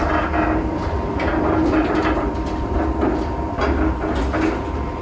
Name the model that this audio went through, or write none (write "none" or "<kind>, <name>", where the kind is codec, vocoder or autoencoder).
none